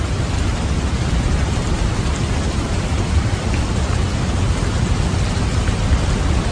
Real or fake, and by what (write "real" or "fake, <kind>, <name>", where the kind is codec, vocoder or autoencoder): real